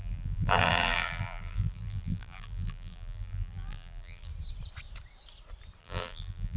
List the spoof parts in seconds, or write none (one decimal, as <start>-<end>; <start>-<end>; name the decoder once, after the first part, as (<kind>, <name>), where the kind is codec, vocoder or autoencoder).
0.0-4.3 (vocoder, BigVGAN v2); 5.8-6.6